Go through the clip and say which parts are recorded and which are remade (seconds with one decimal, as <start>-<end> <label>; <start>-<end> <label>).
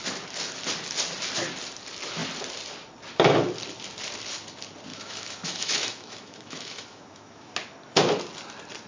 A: 0.0-4.9 recorded; 4.9-7.5 remade; 7.5-8.9 recorded